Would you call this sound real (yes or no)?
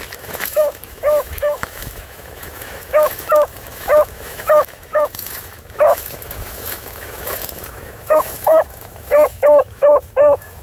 no